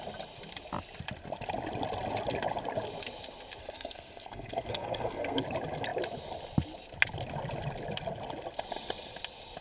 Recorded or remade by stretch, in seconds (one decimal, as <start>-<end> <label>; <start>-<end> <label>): 0.0-3.6 recorded; 3.6-5.4 remade; 5.4-9.6 recorded